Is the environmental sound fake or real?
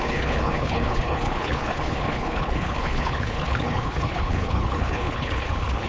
fake